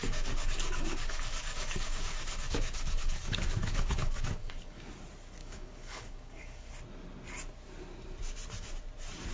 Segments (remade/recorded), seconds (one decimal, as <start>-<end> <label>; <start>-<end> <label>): 0.0-4.9 remade; 4.9-5.4 recorded; 5.4-6.7 remade; 6.7-9.3 recorded